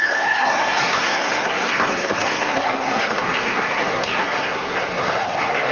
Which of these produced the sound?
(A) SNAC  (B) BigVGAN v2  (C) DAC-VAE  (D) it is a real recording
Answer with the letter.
A